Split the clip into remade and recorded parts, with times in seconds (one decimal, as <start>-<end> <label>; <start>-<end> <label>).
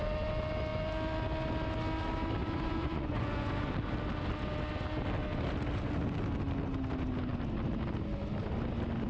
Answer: 0.0-2.4 recorded; 2.4-3.7 remade; 3.7-9.1 recorded